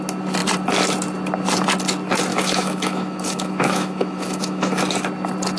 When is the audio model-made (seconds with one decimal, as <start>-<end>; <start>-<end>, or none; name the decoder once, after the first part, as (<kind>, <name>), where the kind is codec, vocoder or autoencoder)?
2.3-4.8 (autoencoder, DAC-VAE)